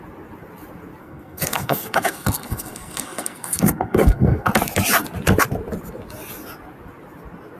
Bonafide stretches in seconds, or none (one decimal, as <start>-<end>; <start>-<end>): 0.0-1.0; 4.5-7.6